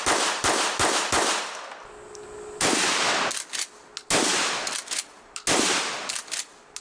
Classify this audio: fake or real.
real